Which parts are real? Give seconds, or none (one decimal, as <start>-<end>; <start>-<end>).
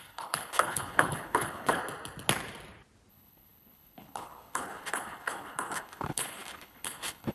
1.8-3.1